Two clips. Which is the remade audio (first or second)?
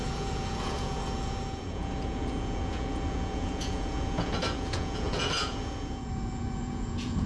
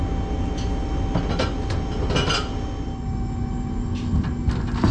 first